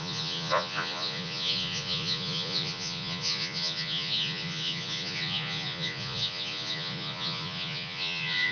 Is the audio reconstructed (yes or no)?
yes